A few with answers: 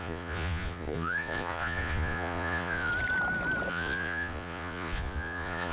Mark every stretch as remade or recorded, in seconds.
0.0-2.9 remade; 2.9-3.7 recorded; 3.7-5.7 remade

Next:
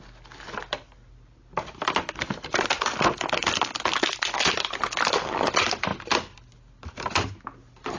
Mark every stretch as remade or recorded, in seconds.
0.0-8.0 recorded

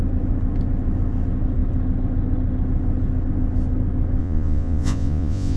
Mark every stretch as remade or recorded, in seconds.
0.0-4.2 recorded; 4.2-5.6 remade

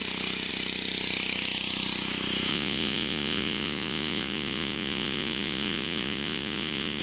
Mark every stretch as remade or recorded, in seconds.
0.0-2.5 recorded; 2.5-7.0 remade

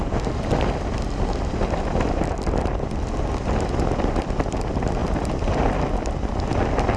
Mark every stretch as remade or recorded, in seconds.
0.0-7.0 recorded

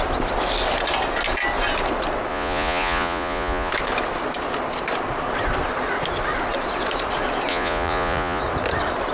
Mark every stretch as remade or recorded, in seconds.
0.0-2.3 recorded; 2.3-3.7 remade; 3.7-7.5 recorded; 7.5-8.4 remade; 8.4-9.1 recorded